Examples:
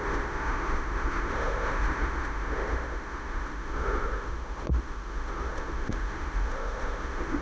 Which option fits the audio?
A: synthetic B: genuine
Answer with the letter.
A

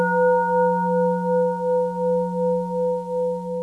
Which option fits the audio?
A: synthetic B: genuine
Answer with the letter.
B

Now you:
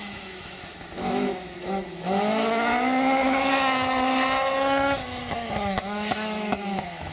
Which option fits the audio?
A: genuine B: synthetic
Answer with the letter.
B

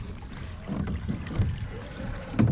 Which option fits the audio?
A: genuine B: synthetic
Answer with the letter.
A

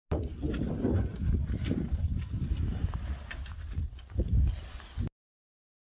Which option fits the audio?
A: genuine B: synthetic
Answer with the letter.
A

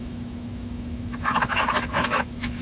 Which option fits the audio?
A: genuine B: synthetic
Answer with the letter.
B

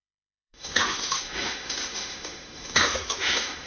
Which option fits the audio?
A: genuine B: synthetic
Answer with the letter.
B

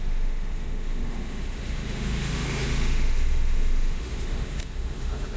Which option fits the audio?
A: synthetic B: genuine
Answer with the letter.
A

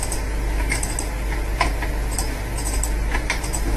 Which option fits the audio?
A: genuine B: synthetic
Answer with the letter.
A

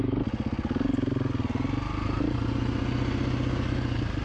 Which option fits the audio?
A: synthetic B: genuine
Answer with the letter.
B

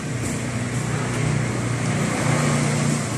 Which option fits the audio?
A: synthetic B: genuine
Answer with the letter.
B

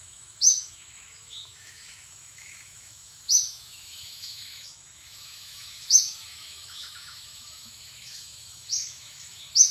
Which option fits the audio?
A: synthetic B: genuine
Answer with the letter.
A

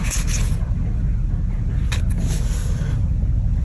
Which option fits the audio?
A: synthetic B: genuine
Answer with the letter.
B